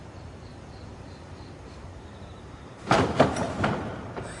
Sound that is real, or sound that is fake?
fake